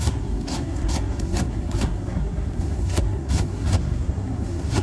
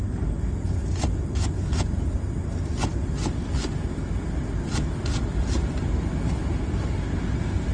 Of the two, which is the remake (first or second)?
first